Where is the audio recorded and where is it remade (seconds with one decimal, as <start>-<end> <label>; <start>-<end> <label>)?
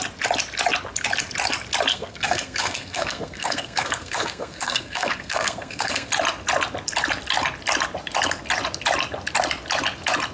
0.0-1.9 recorded; 1.9-6.1 remade; 6.1-10.3 recorded